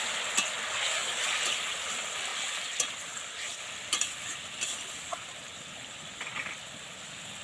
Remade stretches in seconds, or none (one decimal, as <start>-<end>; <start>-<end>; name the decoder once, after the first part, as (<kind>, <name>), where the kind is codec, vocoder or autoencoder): none